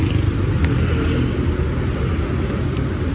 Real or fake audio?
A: real